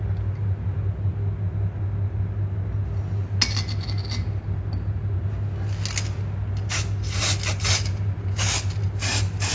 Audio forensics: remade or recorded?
recorded